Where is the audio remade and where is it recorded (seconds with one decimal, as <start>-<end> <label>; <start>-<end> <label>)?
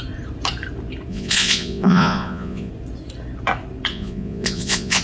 0.0-1.1 recorded; 1.1-2.7 remade; 2.7-3.9 recorded; 3.9-5.0 remade